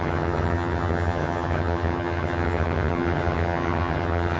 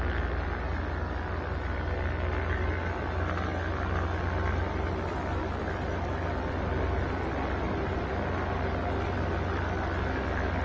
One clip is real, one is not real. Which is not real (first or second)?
first